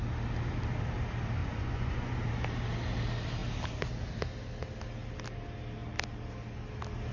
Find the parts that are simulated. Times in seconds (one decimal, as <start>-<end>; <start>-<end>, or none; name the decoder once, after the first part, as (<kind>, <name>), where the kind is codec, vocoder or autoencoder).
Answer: 1.4-2.2 (vocoder, Vocos)